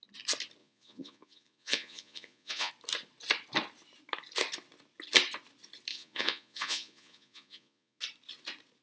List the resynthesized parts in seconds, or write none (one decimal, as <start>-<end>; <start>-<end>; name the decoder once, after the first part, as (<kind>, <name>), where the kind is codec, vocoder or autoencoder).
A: 0.6-2.7 (vocoder, Vocos); 5.9-8.0